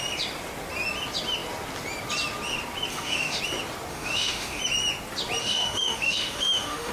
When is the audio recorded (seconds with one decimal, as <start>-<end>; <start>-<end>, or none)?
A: 0.0-2.9; 3.4-3.9; 4.6-5.4